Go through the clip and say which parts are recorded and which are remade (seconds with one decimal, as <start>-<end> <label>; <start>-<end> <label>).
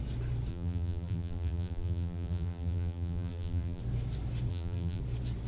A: 0.0-0.5 recorded; 0.5-3.8 remade; 3.8-4.5 recorded; 4.5-5.0 remade; 5.0-5.5 recorded